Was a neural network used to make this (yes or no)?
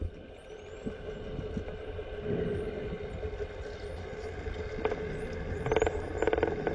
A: no